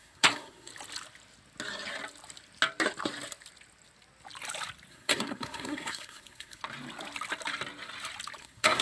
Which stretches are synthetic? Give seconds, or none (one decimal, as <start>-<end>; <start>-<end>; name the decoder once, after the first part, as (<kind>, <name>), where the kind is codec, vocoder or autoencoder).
0.0-0.7 (codec, SNAC); 4.9-6.6; 8.4-8.8